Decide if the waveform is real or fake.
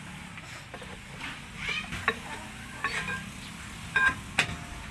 real